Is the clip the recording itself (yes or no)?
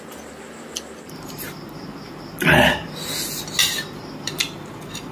yes